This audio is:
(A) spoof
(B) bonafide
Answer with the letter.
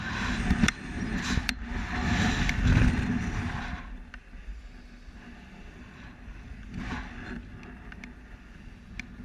B